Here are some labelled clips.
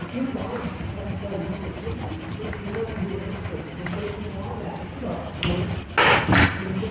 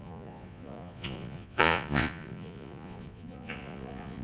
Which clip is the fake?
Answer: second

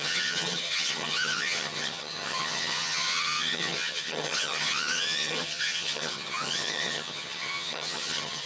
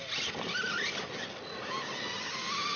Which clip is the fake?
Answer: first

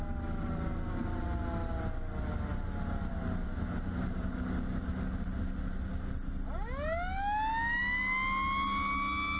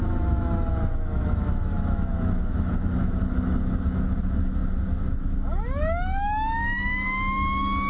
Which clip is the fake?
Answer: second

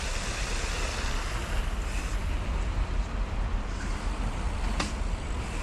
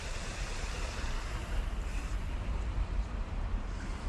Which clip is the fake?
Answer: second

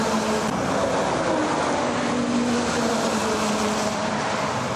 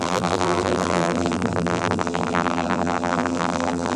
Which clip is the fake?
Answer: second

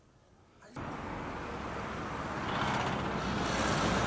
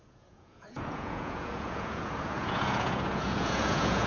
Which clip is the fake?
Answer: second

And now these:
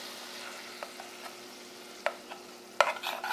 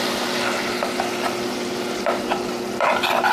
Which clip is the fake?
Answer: second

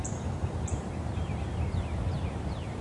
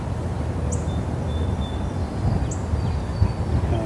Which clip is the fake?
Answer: first